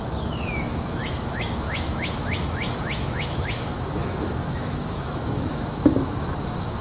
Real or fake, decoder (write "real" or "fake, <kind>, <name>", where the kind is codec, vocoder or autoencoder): fake, autoencoder, DAC-VAE